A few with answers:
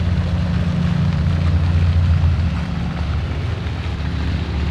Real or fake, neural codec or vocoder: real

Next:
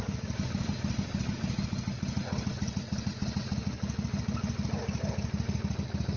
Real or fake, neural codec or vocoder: real